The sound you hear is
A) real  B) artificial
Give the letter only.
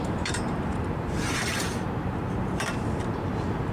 B